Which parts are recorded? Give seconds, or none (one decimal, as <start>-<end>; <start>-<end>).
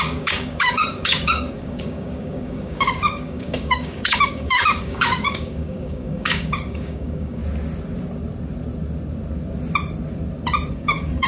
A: 7.4-10.7